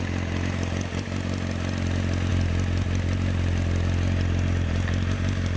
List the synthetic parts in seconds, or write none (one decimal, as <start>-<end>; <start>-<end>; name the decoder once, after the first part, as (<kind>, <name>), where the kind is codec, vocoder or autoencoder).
none

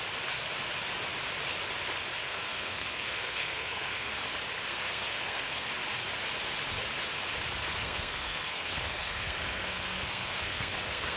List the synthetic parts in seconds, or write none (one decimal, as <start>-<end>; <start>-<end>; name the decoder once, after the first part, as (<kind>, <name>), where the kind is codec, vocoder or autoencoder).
2.2-4.1 (codec, SNAC); 4.7-5.7; 7.7-11.2

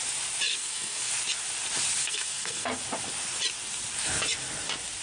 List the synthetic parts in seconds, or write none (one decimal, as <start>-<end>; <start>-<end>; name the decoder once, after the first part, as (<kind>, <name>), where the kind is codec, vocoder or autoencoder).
0.5-1.1 (codec, SNAC); 2.0-2.8

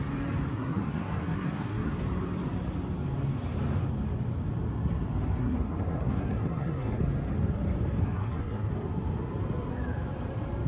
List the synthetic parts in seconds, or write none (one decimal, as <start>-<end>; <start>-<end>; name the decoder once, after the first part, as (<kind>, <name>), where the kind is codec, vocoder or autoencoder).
0.5-1.9 (codec, SNAC); 5.4-7.0; 8.0-8.7

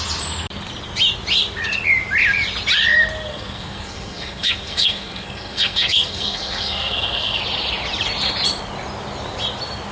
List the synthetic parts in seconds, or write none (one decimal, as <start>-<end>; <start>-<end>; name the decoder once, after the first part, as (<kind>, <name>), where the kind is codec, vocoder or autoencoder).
3.3-7.4 (codec, SNAC)

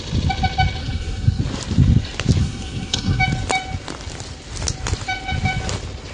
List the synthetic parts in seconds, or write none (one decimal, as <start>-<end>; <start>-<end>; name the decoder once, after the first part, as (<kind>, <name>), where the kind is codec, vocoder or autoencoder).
0.8-1.4 (codec, SNAC); 2.4-3.2